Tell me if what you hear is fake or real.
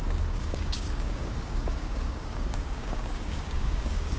fake